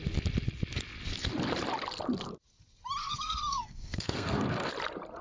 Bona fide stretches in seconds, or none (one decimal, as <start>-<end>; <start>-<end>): 0.0-3.0; 4.7-5.2